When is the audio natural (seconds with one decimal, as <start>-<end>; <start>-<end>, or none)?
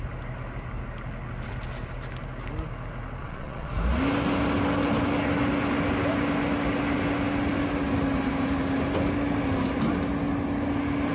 0.0-3.2; 3.7-11.1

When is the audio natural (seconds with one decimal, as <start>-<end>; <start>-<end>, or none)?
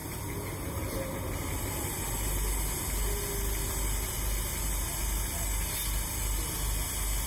0.0-7.3